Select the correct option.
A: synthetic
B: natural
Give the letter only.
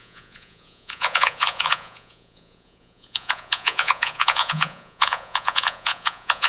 A